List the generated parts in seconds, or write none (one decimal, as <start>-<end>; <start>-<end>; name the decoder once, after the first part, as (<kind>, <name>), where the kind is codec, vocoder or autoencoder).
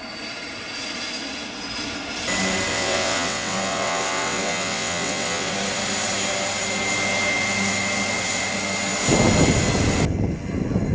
2.7-5.5 (vocoder, WaveNeXt)